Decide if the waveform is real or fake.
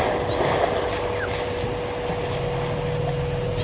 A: real